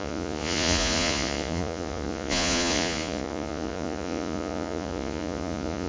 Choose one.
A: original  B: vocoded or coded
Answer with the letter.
B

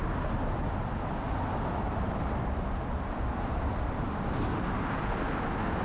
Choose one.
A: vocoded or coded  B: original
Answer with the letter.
B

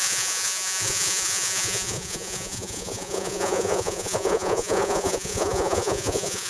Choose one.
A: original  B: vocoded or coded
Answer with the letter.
B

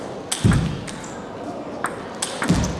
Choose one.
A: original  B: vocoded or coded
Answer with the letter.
A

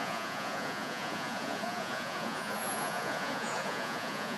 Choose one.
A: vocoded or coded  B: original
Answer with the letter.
A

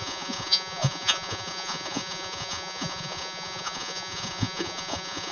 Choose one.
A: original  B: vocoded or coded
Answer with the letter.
B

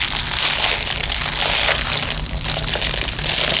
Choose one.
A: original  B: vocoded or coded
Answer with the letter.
A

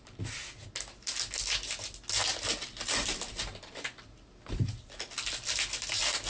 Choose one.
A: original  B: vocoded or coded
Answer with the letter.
A